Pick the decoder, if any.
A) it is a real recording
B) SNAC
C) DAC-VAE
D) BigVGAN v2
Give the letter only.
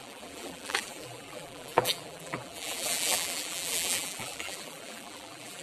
D